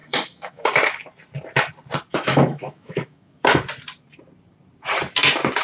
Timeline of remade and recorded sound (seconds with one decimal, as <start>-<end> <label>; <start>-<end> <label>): 0.0-0.7 remade; 0.7-2.1 recorded; 2.1-3.6 remade; 3.6-5.6 recorded